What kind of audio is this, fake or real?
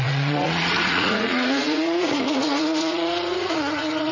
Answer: fake